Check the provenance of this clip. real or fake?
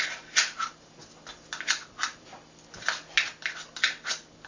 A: real